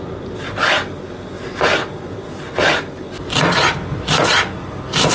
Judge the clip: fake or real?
real